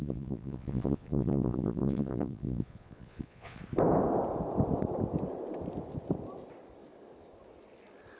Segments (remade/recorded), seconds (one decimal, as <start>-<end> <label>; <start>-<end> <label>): 0.0-3.6 remade; 3.6-8.2 recorded